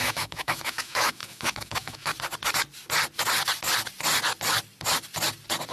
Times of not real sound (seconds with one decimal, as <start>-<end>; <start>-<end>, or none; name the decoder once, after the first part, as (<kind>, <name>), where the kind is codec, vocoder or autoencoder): 0.0-2.1 (autoencoder, DAC-VAE)